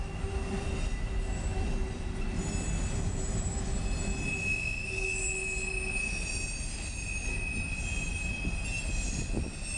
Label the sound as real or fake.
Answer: real